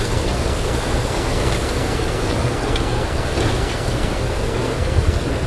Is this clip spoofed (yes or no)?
yes